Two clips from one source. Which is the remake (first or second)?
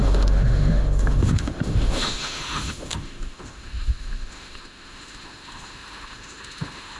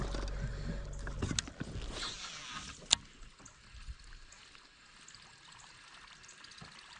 first